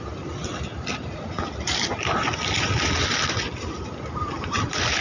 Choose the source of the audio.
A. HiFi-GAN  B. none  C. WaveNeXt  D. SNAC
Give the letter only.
B